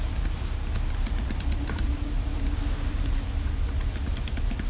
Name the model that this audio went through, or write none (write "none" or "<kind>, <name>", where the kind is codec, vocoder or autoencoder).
none